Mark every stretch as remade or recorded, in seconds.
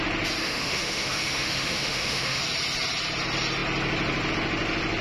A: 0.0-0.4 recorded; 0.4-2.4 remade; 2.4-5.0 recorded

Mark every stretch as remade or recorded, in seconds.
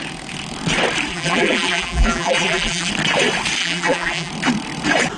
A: 0.0-1.1 recorded; 1.1-2.9 remade; 2.9-3.6 recorded; 3.6-4.3 remade; 4.3-5.2 recorded